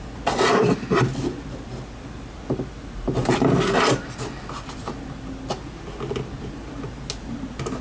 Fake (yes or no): no